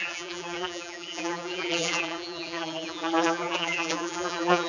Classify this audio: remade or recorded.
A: remade